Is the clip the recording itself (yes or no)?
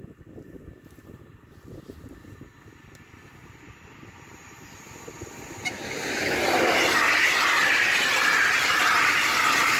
yes